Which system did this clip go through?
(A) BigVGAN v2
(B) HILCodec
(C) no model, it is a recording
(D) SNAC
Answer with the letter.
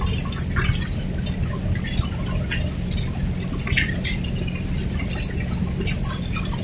C